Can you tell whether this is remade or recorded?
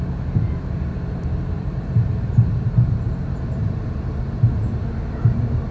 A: remade